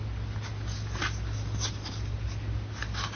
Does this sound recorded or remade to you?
recorded